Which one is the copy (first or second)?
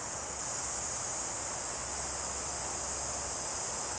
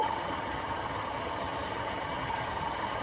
second